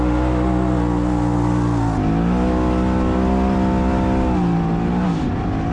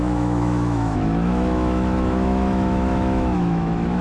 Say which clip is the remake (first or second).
second